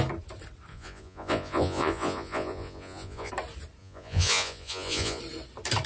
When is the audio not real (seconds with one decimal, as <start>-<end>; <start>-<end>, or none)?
0.7-3.3; 3.8-5.2